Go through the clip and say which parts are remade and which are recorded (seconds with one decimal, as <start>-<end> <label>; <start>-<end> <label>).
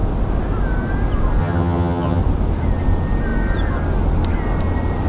0.0-1.4 recorded; 1.4-2.2 remade; 2.2-5.1 recorded